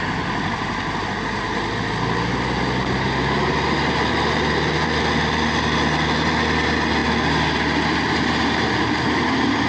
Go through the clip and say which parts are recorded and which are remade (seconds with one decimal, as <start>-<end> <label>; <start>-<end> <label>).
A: 0.0-9.7 recorded